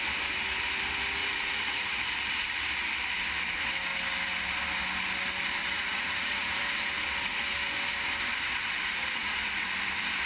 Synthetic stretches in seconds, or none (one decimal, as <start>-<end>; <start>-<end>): 1.2-2.0; 5.6-6.6